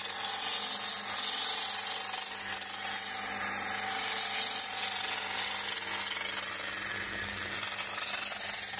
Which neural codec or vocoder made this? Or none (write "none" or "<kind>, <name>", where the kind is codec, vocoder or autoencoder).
none